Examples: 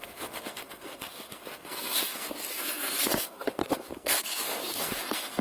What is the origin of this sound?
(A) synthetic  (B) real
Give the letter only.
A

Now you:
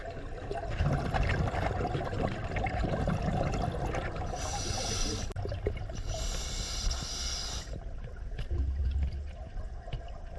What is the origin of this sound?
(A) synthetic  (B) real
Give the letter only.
B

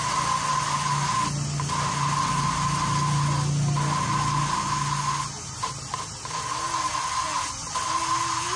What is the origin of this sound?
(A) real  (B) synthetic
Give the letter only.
A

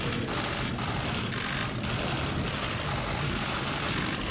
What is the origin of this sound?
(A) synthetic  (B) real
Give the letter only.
B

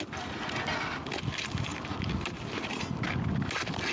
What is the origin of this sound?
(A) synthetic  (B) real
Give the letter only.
B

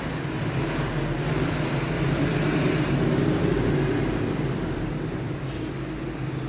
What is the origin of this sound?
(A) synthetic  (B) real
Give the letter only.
B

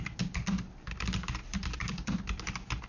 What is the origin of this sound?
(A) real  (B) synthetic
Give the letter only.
A